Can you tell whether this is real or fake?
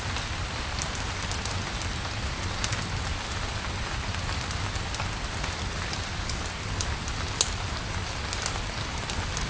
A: real